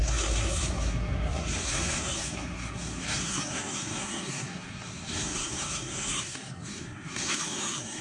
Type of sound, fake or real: fake